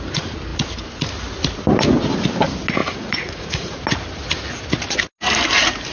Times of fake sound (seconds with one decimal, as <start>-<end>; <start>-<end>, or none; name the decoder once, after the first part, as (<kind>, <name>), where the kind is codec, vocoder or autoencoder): 2.8-3.8 (vocoder, Vocos)

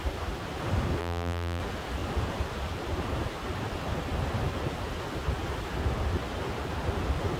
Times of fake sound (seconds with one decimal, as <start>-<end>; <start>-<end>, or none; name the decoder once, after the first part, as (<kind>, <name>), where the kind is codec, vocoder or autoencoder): 1.0-1.6 (vocoder, BigVGAN v2)